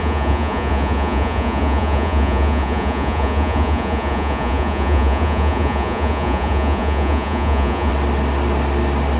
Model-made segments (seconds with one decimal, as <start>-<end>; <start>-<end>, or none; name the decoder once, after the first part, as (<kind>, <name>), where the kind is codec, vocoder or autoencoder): 0.0-7.9 (vocoder, Vocos)